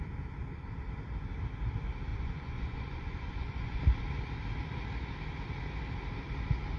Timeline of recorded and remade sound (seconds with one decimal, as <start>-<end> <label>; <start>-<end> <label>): 0.0-2.1 recorded; 2.1-3.8 remade; 3.8-6.8 recorded